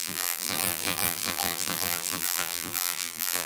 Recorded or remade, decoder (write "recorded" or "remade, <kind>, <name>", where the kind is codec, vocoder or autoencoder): remade, vocoder, BigVGAN v2